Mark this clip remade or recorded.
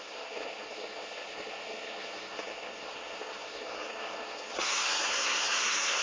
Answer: remade